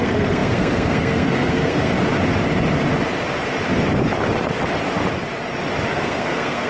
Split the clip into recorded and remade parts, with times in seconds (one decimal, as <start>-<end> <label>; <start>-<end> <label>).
0.0-1.9 remade; 1.9-5.9 recorded; 5.9-6.7 remade